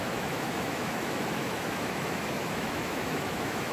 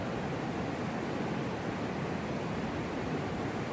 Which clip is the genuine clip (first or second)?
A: second